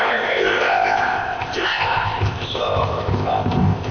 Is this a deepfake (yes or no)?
yes